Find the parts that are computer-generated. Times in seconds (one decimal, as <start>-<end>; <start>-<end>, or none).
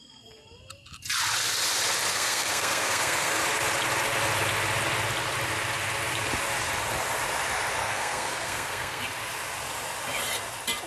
2.1-3.4; 7.8-9.0